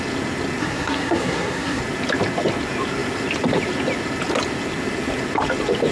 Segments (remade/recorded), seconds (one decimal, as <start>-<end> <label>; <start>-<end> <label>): 0.0-0.6 recorded; 0.6-1.8 remade; 1.8-5.9 recorded